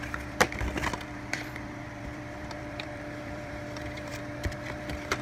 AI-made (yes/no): yes